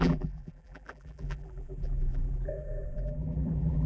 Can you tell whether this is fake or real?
fake